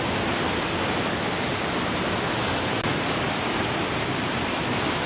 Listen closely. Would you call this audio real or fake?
real